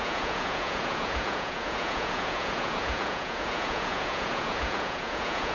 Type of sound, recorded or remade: remade